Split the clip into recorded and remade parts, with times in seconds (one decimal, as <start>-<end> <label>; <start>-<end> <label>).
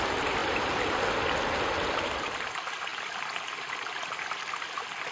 0.0-5.1 recorded